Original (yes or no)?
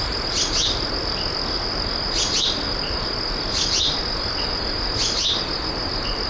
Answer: yes